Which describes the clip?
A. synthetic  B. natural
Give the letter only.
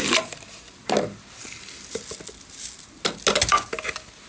B